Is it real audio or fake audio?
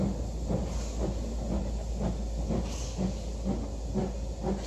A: real